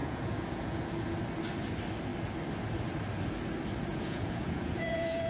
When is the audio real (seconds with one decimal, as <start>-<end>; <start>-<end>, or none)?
1.2-3.9